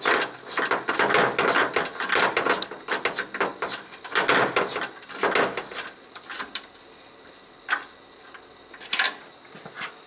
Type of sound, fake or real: real